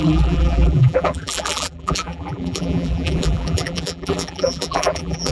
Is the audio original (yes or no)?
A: no